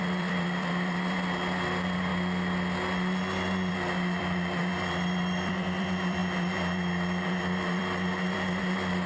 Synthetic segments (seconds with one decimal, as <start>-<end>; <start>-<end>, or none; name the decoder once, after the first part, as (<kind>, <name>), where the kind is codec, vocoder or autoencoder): 0.0-2.1 (vocoder, BigVGAN v2); 3.7-9.1